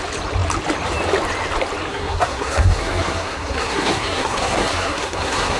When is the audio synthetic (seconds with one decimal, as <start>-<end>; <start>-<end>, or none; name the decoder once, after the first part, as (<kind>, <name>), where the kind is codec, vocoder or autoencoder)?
1.9-5.6 (codec, SNAC)